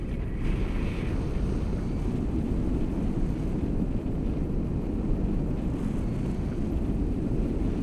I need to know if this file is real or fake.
real